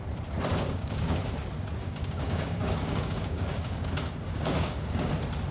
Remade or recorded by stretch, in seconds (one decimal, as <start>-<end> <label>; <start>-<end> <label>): 0.0-0.5 recorded; 0.5-1.2 remade; 1.2-1.8 recorded; 1.8-5.1 remade; 5.1-5.5 recorded